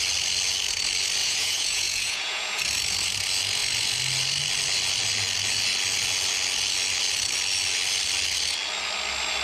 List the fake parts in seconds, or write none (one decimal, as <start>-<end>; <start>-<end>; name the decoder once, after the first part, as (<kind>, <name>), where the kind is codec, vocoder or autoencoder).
1.2-2.6 (vocoder, Vocos)